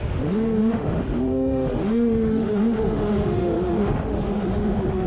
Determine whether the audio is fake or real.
fake